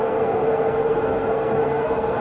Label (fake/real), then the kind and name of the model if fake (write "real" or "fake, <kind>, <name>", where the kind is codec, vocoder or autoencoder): fake, codec, SNAC